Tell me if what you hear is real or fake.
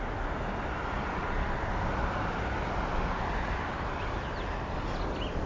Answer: real